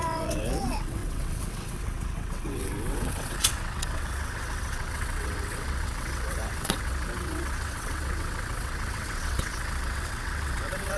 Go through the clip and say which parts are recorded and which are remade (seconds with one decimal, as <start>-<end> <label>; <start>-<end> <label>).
0.0-11.0 remade